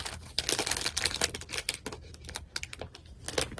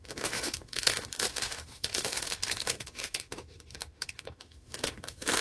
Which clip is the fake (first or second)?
second